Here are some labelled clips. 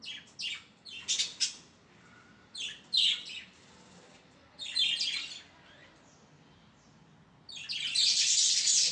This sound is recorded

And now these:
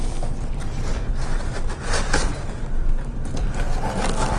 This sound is recorded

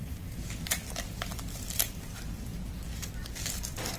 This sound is remade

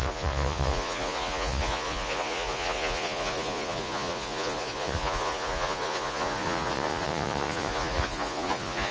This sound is remade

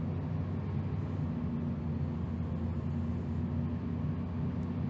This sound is recorded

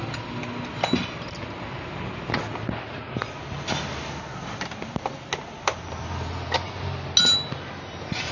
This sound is recorded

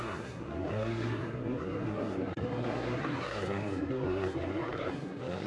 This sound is remade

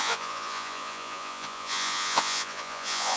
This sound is remade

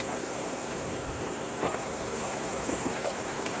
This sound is remade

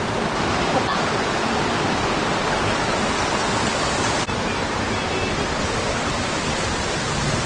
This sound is recorded